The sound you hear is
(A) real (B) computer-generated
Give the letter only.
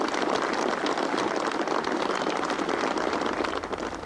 A